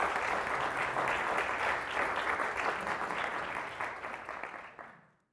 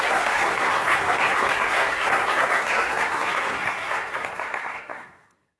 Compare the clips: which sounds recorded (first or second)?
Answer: first